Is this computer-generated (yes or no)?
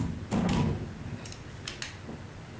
no